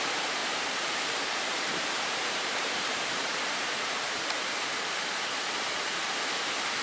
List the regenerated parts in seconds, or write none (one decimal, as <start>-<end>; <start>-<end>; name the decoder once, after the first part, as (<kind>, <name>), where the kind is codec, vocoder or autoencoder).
0.4-4.5 (vocoder, BigVGAN v2)